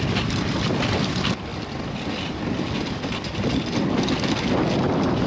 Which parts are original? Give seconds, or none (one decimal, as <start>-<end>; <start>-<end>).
0.0-5.3